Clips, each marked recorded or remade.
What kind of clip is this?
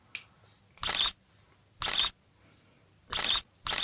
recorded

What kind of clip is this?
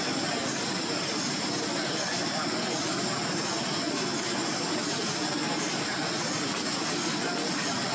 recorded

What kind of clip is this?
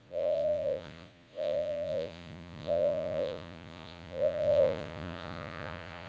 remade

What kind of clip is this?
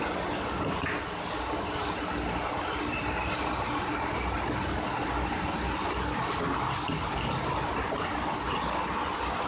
recorded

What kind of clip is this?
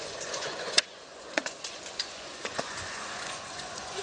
remade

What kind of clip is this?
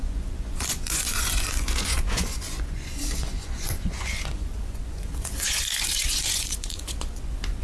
remade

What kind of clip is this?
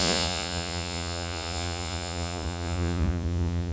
remade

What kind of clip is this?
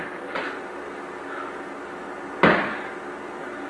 recorded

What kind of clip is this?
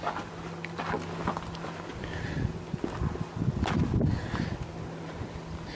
recorded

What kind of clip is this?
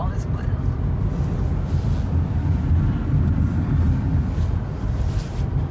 recorded